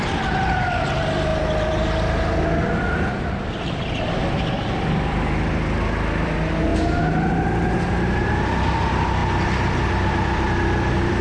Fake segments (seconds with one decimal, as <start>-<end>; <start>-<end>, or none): 0.0-6.7; 8.4-9.2